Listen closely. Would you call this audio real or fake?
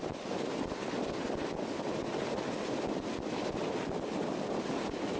real